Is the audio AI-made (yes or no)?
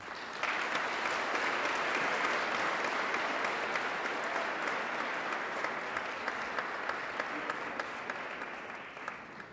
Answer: no